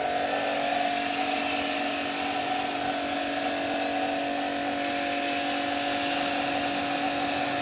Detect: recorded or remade recorded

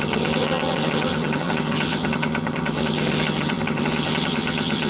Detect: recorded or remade remade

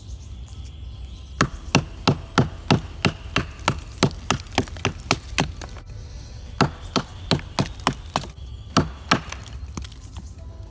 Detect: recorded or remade recorded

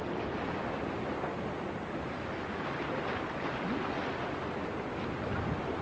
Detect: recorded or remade recorded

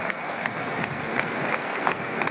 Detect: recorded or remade remade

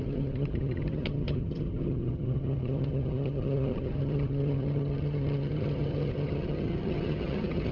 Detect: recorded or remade remade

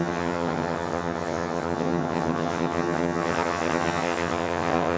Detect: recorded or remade remade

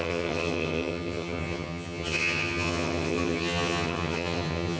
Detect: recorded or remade remade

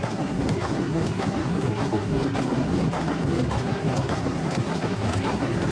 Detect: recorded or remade remade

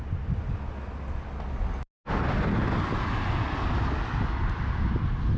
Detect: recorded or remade recorded